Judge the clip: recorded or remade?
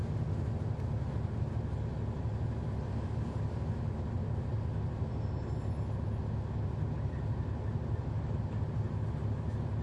recorded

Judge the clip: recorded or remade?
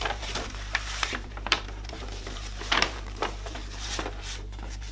remade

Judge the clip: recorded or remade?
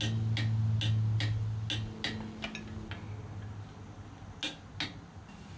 recorded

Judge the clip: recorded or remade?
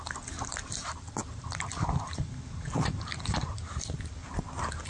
recorded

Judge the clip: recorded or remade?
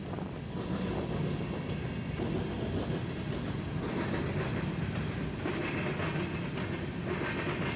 recorded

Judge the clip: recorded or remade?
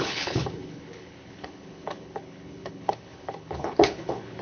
remade